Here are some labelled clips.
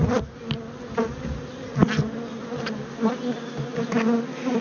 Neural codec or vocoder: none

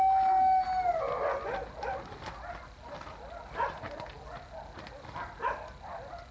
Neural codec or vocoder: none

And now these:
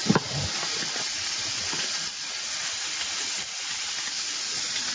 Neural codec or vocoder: none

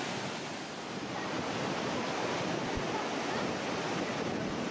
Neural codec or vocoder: none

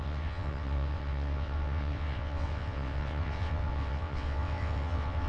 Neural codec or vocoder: vocoder, WaveNeXt